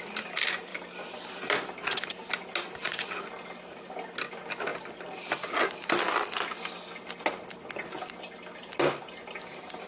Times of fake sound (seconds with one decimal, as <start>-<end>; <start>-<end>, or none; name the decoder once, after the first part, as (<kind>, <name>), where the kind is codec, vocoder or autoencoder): none